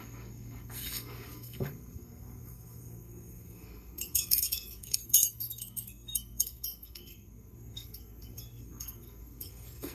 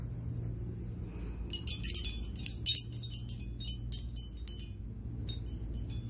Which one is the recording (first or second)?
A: second